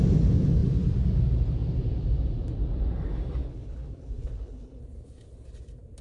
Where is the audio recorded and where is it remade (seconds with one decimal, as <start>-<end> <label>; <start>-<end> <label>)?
0.0-3.5 recorded; 3.5-4.8 remade; 4.8-6.0 recorded